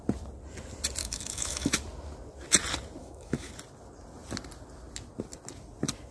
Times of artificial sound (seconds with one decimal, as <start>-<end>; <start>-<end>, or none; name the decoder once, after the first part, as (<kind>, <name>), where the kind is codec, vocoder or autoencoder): 1.0-1.7 (autoencoder, DAC-VAE); 3.0-3.5